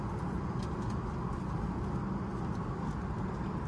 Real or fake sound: real